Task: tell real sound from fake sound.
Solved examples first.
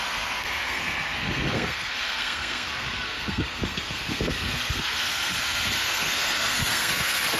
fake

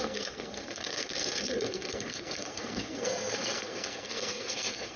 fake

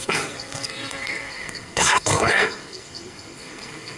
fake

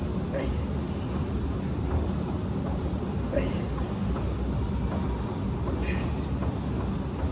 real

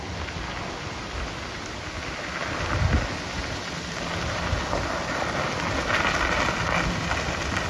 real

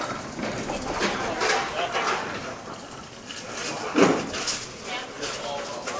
real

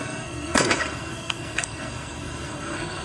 fake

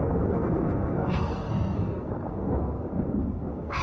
fake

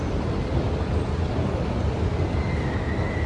real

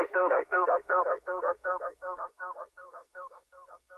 fake